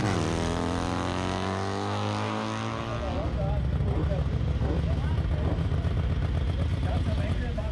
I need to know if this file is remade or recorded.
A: recorded